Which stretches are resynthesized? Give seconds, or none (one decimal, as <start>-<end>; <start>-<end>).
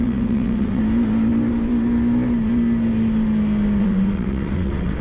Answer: 0.0-0.8; 3.8-5.0